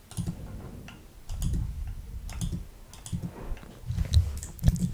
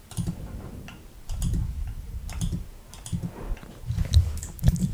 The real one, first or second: first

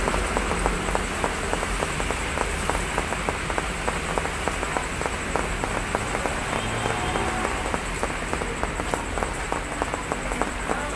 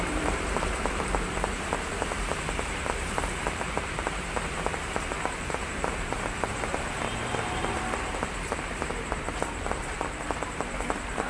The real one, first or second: first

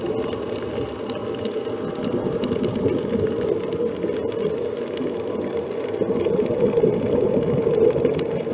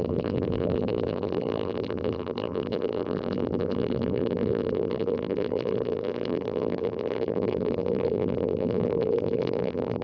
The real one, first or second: first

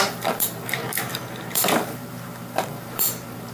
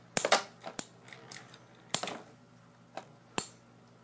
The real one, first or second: second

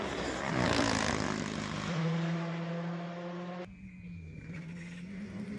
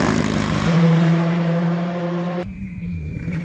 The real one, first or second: first